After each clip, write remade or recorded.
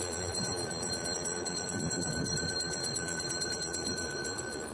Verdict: remade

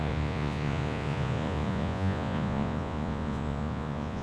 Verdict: remade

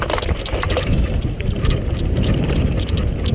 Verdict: recorded